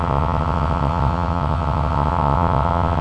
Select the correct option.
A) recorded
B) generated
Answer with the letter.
B